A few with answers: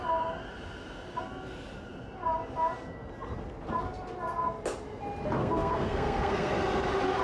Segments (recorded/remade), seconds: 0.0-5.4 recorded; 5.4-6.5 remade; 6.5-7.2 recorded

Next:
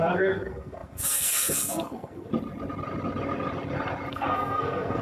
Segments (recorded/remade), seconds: 0.0-2.3 remade; 2.3-4.1 recorded; 4.1-5.0 remade

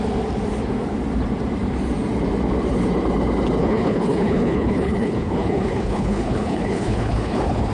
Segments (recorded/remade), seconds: 0.0-3.6 recorded; 3.6-7.7 remade

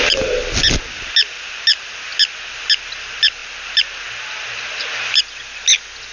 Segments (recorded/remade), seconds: 0.0-6.1 recorded

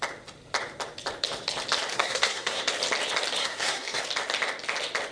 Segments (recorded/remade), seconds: 0.0-1.9 recorded; 1.9-2.6 remade; 2.6-3.4 recorded; 3.4-4.0 remade; 4.0-5.1 recorded

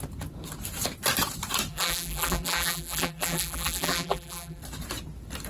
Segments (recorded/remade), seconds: 0.0-1.7 recorded; 1.7-4.6 remade; 4.6-5.5 recorded

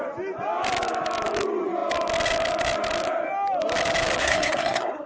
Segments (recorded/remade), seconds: 0.0-4.2 recorded; 4.2-5.1 remade

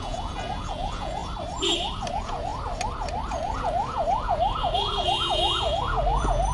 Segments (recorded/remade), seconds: 0.0-1.2 remade; 1.2-2.1 recorded; 2.1-2.5 remade; 2.5-3.3 recorded; 3.3-6.5 remade